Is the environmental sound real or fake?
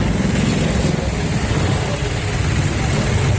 real